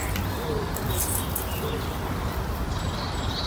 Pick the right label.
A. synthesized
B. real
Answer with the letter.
B